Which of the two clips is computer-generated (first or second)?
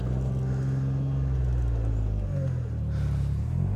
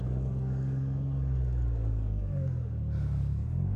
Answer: second